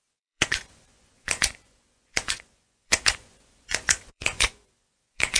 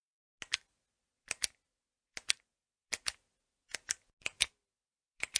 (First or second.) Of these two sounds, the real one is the second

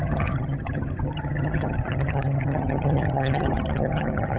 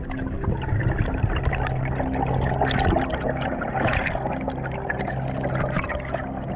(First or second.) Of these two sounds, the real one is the second